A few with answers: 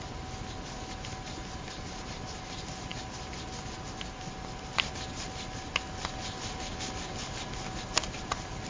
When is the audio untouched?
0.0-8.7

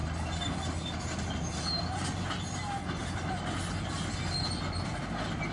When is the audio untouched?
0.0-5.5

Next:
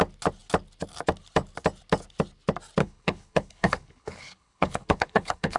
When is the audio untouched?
0.0-2.8

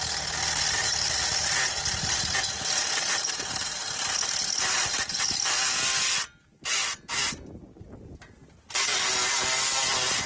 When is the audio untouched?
0.0-10.3

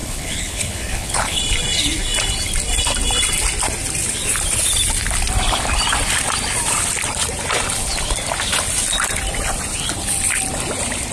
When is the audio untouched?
1.4-11.1